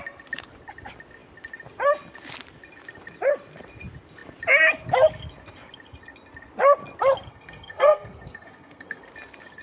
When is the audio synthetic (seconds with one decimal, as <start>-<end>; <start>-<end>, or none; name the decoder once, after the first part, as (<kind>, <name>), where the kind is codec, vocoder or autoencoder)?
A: 7.3-9.0 (codec, SNAC)